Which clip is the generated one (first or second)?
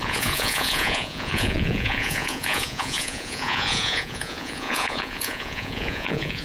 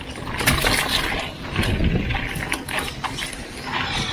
first